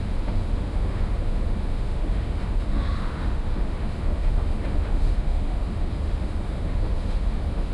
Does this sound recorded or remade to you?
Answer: remade